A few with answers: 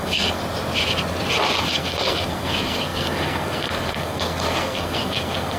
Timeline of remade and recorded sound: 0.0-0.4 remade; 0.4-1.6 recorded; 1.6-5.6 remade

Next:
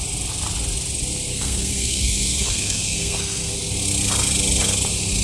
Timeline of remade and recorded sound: 0.0-1.3 recorded; 1.3-3.5 remade; 3.5-5.2 recorded

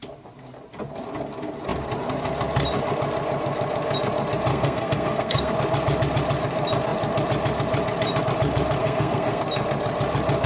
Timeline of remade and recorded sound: 0.0-4.5 recorded; 4.5-5.5 remade; 5.5-8.8 recorded; 8.8-9.4 remade; 9.4-10.5 recorded